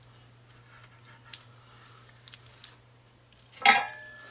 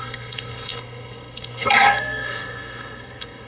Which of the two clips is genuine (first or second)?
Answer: first